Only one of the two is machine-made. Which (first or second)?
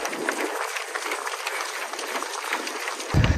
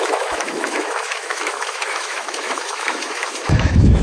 second